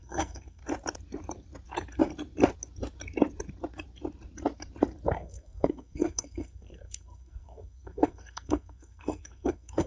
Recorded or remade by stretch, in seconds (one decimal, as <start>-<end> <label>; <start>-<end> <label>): 0.0-0.6 remade; 0.6-5.1 recorded; 5.1-9.9 remade